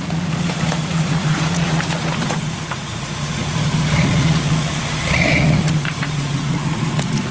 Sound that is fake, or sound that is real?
fake